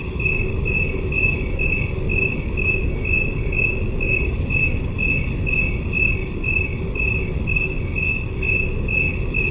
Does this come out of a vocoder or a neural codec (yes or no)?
no